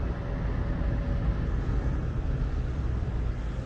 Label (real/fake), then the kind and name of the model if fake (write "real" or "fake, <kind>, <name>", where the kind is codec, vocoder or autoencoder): real